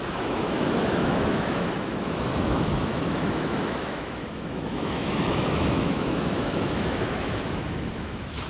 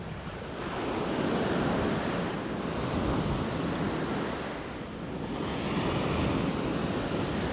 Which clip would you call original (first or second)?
second